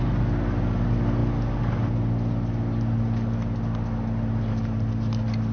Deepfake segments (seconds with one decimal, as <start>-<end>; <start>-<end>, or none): none

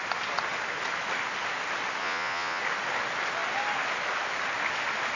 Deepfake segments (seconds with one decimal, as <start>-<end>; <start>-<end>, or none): 2.0-2.6

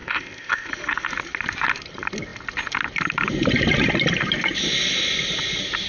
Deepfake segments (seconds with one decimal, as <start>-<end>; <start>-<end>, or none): 0.0-0.7